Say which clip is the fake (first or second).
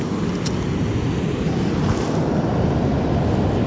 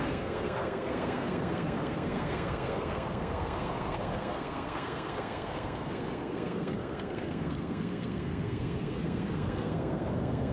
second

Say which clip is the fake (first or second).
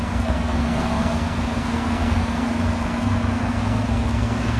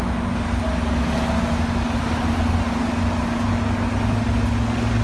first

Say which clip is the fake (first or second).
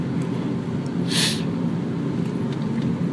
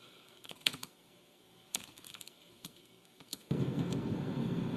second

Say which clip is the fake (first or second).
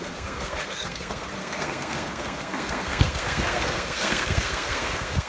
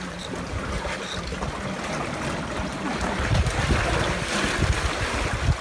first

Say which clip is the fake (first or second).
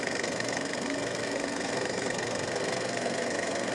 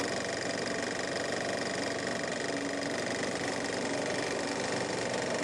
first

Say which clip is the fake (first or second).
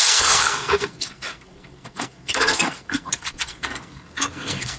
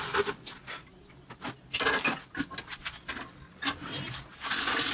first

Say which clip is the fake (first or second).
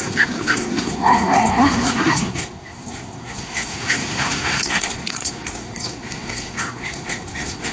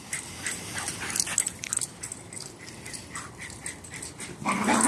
first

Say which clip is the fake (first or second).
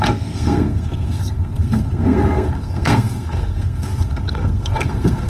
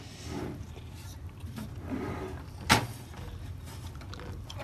first